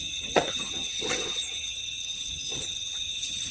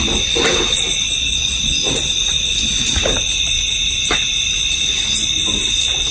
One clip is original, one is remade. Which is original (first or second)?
second